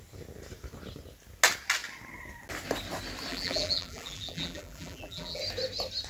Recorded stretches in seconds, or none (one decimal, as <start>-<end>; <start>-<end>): 0.0-3.3; 5.4-6.1